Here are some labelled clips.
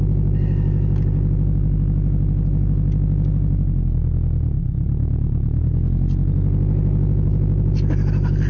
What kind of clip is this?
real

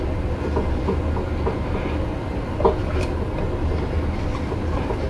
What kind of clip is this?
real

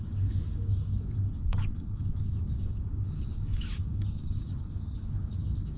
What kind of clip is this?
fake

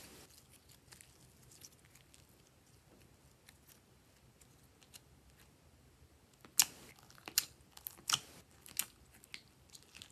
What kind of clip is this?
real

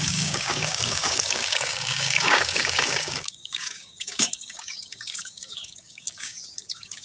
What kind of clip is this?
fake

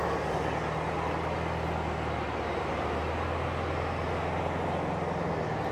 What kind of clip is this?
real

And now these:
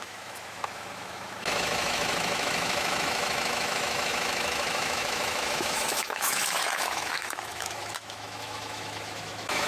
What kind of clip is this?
fake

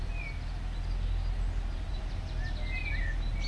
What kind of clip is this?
real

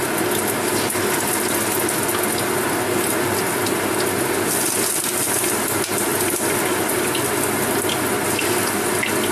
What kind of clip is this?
real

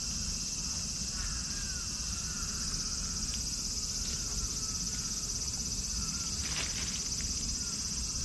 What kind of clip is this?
real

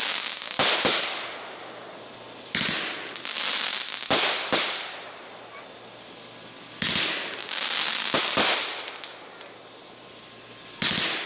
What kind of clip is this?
real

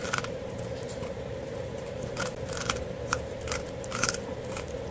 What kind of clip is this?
fake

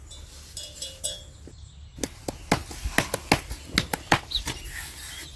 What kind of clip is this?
real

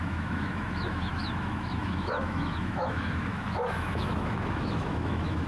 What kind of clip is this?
fake